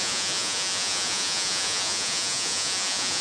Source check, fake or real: fake